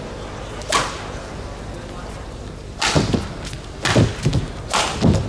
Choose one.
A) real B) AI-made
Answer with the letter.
A